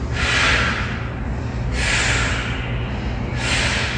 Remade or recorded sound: recorded